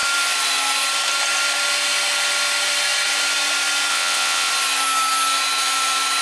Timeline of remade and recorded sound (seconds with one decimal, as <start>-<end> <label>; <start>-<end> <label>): 0.0-3.9 recorded; 3.9-4.5 remade; 4.5-6.2 recorded